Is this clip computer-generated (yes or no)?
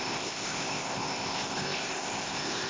yes